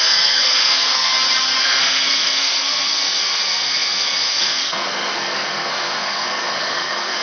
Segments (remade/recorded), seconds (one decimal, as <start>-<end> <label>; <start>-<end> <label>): 0.0-1.1 remade; 1.1-1.6 recorded; 1.6-7.2 remade